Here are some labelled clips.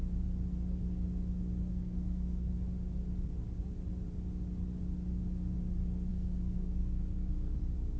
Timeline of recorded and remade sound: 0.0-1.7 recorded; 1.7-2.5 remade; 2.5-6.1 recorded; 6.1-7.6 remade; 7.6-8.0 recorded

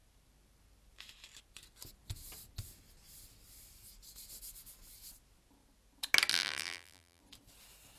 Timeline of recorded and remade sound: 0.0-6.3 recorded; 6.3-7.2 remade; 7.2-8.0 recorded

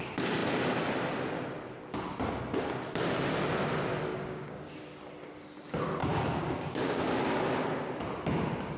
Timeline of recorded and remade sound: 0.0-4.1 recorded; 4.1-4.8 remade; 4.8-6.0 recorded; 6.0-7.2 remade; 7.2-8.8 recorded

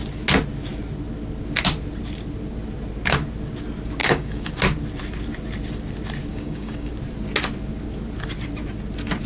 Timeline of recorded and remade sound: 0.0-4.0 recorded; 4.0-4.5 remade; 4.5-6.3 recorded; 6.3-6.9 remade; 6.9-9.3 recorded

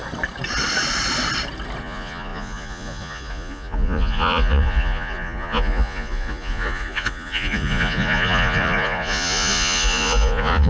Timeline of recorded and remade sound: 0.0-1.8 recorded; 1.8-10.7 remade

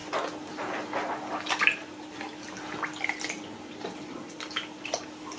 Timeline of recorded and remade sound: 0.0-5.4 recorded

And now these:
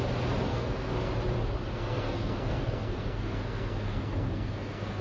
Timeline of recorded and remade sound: 0.0-0.5 recorded; 0.5-1.1 remade; 1.1-1.7 recorded; 1.7-5.0 remade

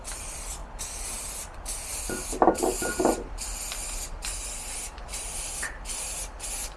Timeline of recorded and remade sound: 0.0-6.8 recorded